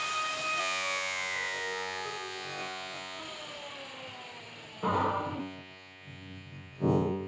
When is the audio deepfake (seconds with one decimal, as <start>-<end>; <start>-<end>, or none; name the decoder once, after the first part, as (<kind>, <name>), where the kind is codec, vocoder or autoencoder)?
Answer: 0.6-3.2 (vocoder, Vocos); 5.4-7.3